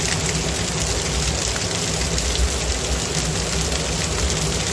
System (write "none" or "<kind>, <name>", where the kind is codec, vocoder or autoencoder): none